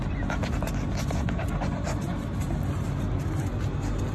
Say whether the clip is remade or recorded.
recorded